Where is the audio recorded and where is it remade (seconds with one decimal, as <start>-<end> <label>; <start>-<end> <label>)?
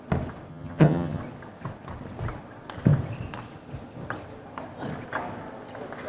0.0-0.5 recorded; 0.5-1.2 remade; 1.2-6.1 recorded